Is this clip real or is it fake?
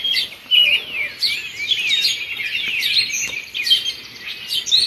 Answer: real